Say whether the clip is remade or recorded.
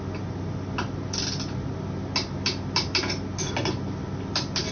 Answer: recorded